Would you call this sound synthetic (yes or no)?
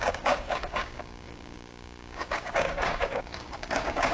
yes